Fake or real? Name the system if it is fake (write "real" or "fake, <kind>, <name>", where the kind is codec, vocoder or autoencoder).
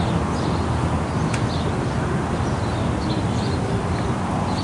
real